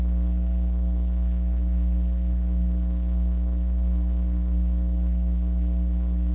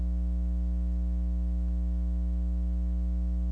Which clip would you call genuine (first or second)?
second